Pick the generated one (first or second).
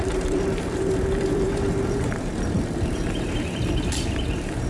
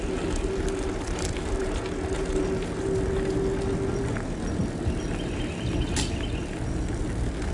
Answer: first